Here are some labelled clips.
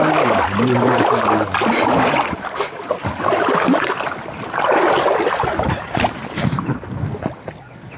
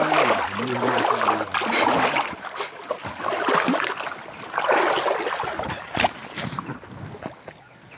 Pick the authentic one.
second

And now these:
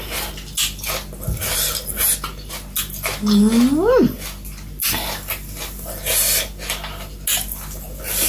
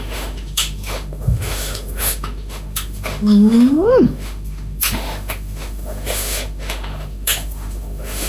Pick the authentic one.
first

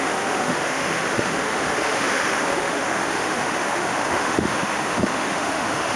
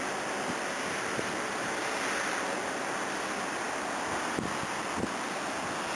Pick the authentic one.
second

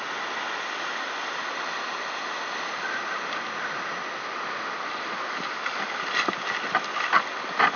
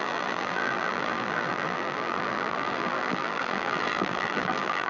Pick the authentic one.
first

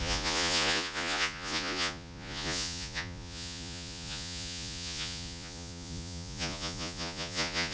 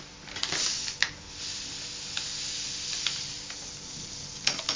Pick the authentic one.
second